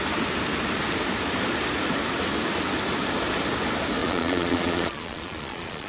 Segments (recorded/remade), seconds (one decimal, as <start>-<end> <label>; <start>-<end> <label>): 0.0-4.0 recorded; 4.0-5.9 remade

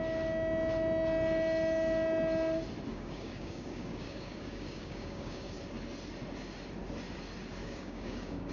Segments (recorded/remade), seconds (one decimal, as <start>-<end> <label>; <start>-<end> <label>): 0.0-2.9 recorded; 2.9-5.6 remade; 5.6-7.6 recorded; 7.6-8.5 remade

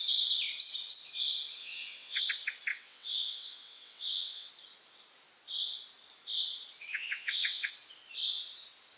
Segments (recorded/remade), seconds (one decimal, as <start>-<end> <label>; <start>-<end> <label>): 0.0-1.6 recorded; 1.6-2.2 remade; 2.2-2.7 recorded; 2.7-4.5 remade; 4.5-6.9 recorded; 6.9-7.7 remade; 7.7-9.0 recorded

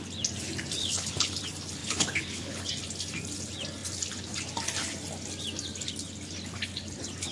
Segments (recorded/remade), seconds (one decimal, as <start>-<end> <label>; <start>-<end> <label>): 0.0-0.8 recorded; 0.8-1.4 remade; 1.4-1.8 recorded; 1.8-2.7 remade; 2.7-7.3 recorded

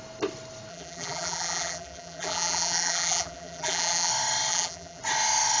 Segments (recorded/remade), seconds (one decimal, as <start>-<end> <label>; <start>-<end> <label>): 0.0-0.7 recorded; 0.7-4.1 remade; 4.1-4.5 recorded; 4.5-5.0 remade; 5.0-5.6 recorded

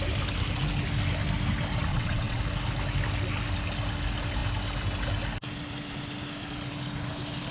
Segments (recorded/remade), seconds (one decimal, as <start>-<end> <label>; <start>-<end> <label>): 0.0-1.9 recorded; 1.9-2.4 remade; 2.4-7.5 recorded

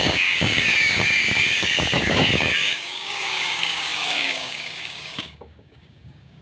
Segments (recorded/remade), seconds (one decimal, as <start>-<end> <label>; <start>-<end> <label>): 0.0-6.4 remade